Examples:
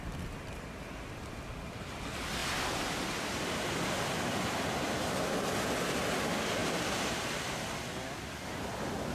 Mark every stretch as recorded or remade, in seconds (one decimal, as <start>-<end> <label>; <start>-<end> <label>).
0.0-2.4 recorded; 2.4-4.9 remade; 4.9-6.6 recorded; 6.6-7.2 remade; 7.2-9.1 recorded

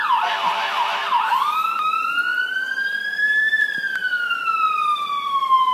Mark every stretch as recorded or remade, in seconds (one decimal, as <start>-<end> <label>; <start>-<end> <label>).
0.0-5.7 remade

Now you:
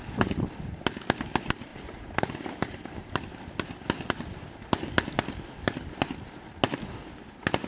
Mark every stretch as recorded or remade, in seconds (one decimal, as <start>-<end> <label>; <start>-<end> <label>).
0.0-1.7 recorded; 1.7-3.2 remade; 3.2-7.7 recorded